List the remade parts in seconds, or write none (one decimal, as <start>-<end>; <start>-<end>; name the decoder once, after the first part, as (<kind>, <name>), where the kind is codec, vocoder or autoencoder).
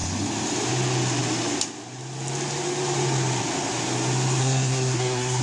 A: 4.4-5.4 (codec, SNAC)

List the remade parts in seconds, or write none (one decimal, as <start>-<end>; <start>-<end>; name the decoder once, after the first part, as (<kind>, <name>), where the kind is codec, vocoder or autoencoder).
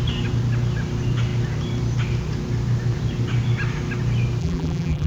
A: 4.4-5.1 (vocoder, BigVGAN v2)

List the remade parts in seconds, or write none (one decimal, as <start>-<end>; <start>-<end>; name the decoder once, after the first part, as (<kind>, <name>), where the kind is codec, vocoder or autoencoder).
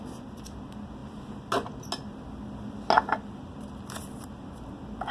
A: none